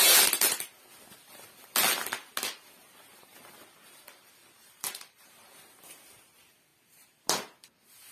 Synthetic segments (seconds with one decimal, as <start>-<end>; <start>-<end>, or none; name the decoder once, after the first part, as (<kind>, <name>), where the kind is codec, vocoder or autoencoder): 4.4-5.5 (vocoder, BigVGAN v2)